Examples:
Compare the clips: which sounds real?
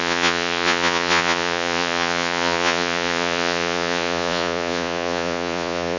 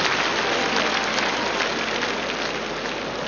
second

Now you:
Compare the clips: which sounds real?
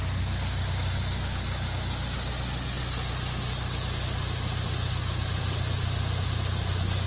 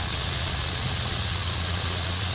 first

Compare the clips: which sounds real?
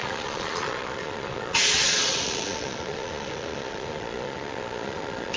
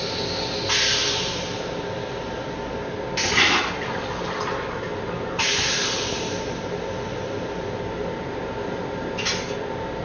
second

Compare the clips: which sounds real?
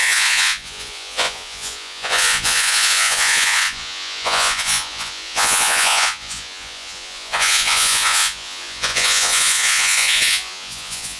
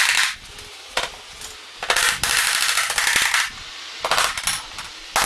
second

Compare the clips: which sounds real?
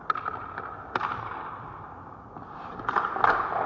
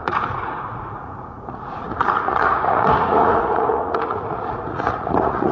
first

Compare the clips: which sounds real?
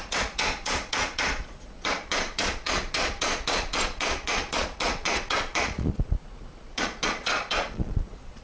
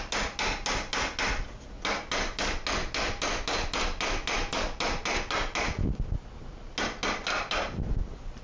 second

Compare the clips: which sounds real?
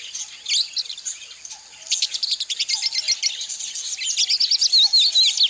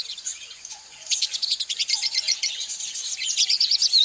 first